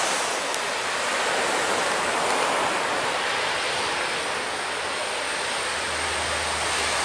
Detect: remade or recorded recorded